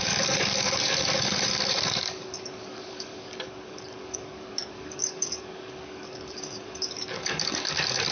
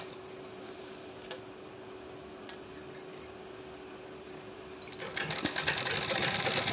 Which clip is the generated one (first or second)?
first